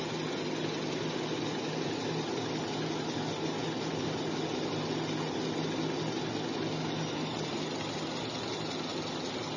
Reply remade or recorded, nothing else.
recorded